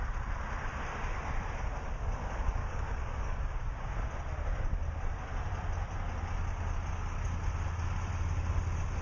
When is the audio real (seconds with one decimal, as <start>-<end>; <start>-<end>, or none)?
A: 0.0-2.6; 3.9-9.0